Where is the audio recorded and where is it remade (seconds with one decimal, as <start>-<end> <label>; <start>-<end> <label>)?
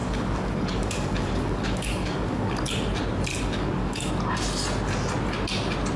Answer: 0.0-2.6 remade; 2.6-3.3 recorded; 3.3-4.1 remade; 4.1-6.0 recorded